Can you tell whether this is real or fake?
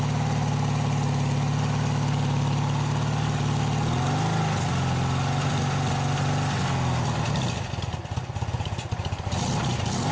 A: real